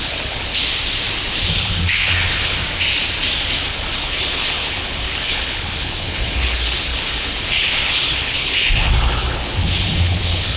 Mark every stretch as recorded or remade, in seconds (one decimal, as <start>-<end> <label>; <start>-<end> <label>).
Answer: 0.0-0.6 remade; 0.6-1.6 recorded; 1.6-2.6 remade; 2.6-3.7 recorded; 3.7-10.6 remade